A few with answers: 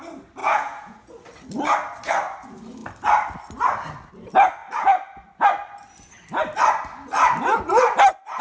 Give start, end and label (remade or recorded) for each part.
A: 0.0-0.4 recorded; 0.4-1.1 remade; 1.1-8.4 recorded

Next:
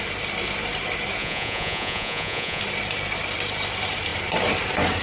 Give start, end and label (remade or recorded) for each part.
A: 0.0-1.2 recorded; 1.2-2.6 remade; 2.6-5.0 recorded